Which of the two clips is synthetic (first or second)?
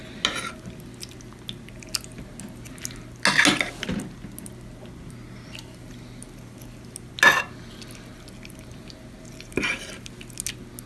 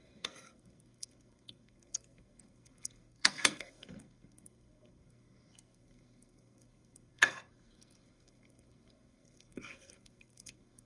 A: second